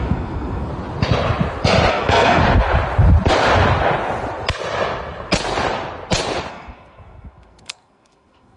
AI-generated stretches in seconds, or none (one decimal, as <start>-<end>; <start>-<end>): 0.0-0.7; 1.9-2.4; 6.5-8.6